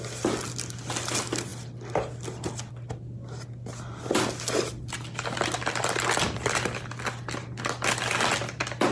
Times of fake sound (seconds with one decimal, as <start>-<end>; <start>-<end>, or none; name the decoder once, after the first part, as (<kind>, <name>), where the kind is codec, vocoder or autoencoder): none

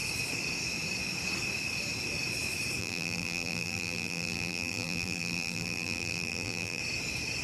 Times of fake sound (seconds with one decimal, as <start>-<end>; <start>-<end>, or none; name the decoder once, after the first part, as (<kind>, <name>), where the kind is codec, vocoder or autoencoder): 2.8-6.8 (vocoder, BigVGAN v2)